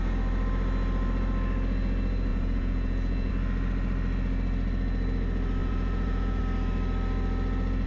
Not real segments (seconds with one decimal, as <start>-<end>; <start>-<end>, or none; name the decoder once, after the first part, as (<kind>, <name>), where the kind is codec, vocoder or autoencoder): 2.3-3.3 (vocoder, Vocos); 5.6-6.4